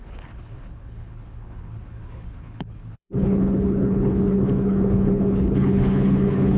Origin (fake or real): fake